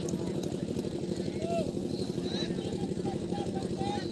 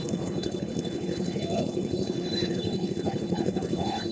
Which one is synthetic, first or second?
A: second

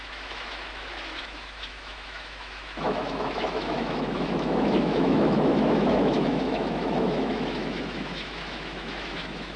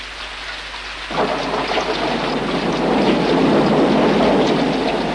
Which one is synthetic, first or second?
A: first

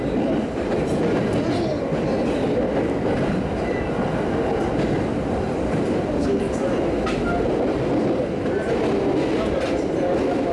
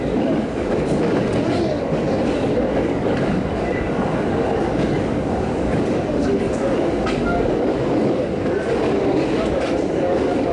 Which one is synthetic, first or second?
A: second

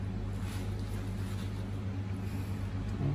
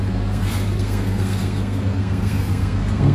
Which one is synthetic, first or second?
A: second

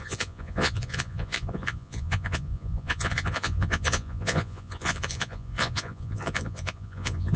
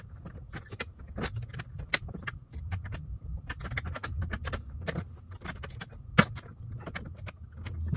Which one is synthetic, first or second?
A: first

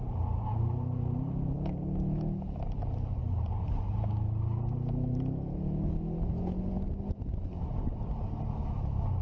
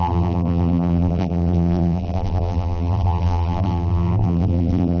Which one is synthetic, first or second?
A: second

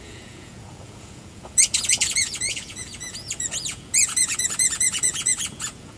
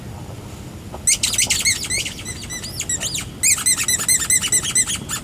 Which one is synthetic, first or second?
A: first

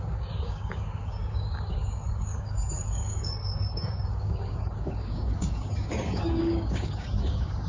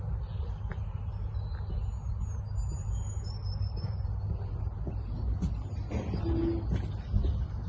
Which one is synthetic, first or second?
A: first